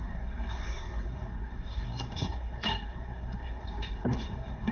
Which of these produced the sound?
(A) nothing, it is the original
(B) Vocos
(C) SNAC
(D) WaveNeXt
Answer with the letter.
C